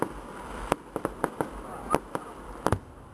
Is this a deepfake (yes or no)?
no